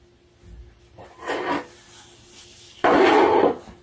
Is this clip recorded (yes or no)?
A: yes